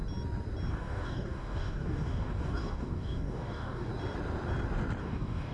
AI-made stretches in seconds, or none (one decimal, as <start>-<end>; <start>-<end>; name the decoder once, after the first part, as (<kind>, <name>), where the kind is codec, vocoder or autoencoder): 0.7-3.9 (codec, DAC); 5.0-5.5